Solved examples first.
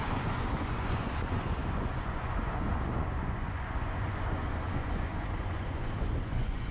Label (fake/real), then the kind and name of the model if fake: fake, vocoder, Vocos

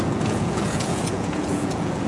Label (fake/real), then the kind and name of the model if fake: fake, vocoder, Vocos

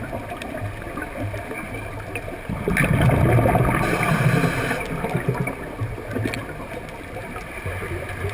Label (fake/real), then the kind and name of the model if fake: real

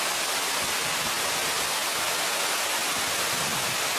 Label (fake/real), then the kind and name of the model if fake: real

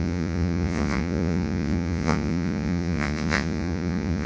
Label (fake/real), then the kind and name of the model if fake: fake, vocoder, Vocos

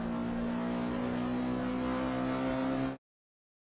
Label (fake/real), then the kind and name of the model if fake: real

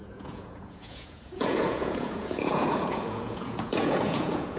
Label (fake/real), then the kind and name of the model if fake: fake, vocoder, Vocos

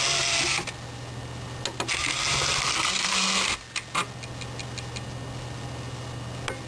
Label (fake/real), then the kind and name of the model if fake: real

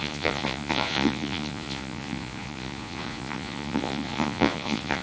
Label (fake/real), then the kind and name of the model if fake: fake, vocoder, Vocos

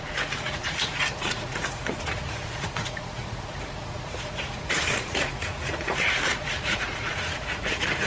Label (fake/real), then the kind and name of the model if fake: fake, vocoder, Vocos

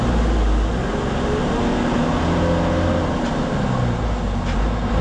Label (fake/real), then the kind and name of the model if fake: real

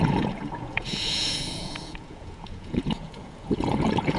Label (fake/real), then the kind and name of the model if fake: fake, vocoder, Vocos